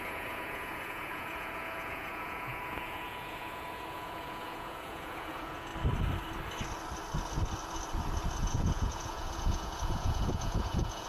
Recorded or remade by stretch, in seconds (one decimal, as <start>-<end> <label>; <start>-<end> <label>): 0.0-5.7 remade; 5.7-8.4 recorded; 8.4-11.1 remade